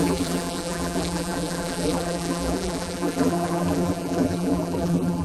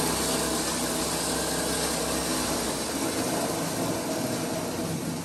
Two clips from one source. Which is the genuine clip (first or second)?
second